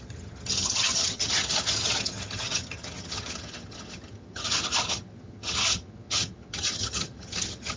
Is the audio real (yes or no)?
no